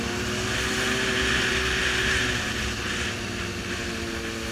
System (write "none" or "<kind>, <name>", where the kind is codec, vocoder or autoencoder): none